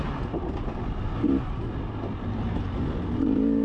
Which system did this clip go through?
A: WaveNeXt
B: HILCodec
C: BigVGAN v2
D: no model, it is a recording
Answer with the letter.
D